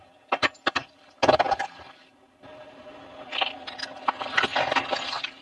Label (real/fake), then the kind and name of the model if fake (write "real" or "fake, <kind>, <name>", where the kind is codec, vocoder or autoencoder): real